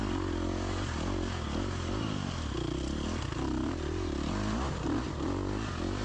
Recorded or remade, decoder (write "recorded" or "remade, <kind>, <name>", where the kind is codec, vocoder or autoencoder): recorded